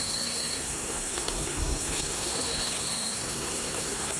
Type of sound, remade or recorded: remade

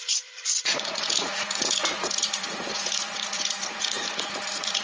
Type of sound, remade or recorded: remade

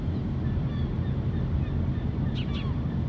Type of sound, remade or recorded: recorded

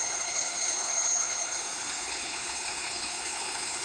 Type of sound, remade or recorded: remade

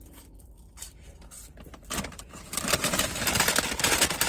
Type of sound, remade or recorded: remade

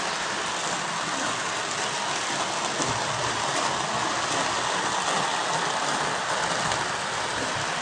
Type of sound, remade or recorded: recorded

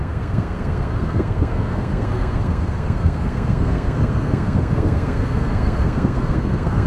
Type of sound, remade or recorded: remade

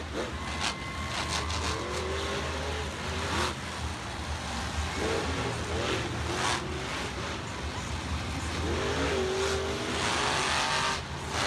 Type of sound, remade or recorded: recorded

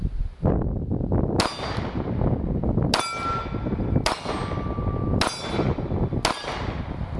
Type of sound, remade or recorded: recorded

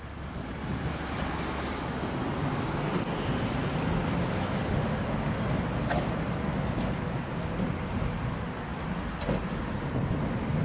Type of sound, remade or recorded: recorded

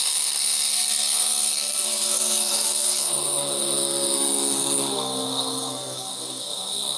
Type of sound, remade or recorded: remade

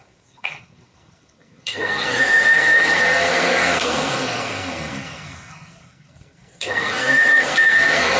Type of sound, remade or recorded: remade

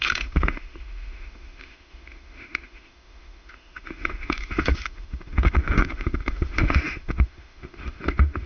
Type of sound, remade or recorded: remade